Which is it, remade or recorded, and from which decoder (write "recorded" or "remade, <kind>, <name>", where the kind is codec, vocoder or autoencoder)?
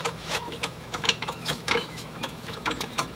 remade, autoencoder, DAC-VAE